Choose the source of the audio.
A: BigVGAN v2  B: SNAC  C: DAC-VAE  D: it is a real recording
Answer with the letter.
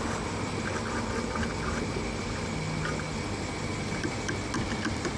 D